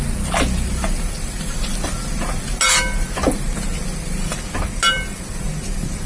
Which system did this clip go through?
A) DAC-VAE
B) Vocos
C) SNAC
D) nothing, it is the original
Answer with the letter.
D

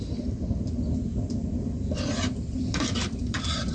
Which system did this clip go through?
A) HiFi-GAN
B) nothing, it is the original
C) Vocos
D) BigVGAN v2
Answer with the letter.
D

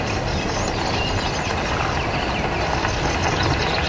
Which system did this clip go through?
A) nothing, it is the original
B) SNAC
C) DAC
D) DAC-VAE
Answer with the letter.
A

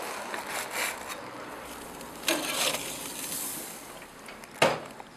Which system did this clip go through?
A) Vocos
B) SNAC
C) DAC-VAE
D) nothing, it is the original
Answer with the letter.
D